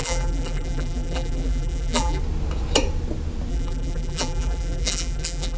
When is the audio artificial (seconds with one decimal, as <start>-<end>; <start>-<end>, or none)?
0.0-2.2; 3.5-5.6